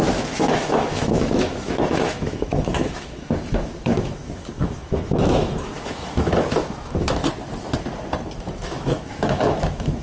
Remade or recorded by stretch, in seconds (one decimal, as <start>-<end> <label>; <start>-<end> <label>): 0.0-7.2 remade; 7.2-8.4 recorded; 8.4-10.0 remade